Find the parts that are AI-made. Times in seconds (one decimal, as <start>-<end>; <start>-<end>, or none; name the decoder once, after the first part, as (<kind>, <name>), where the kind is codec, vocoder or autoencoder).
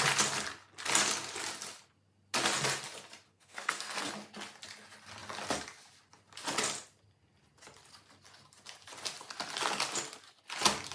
3.3-4.1 (codec, SNAC)